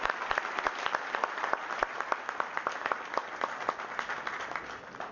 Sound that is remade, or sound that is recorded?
recorded